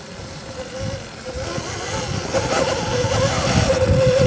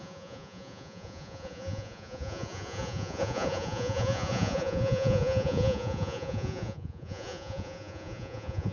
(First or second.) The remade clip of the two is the second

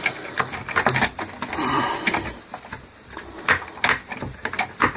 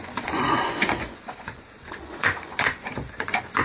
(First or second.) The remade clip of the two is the second